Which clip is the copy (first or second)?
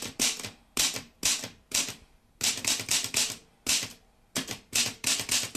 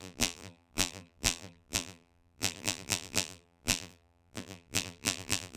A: second